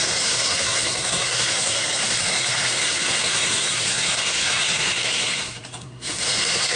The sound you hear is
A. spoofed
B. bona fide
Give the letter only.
A